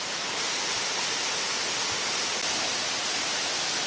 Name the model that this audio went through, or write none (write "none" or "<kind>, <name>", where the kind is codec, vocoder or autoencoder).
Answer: none